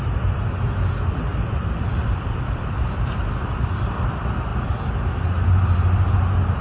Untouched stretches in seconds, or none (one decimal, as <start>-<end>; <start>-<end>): 0.0-1.3; 3.6-6.6